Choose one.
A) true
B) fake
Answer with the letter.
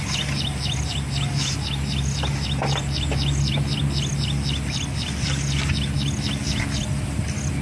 A